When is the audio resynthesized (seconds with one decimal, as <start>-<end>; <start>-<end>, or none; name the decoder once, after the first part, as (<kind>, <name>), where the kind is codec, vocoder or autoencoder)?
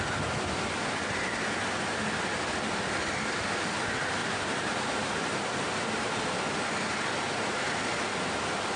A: 4.2-5.7 (vocoder, BigVGAN v2)